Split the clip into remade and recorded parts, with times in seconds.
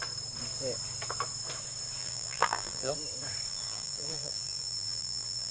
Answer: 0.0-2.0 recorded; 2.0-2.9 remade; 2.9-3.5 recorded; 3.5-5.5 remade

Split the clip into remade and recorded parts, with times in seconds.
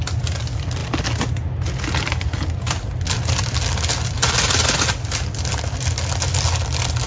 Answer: 0.0-7.1 recorded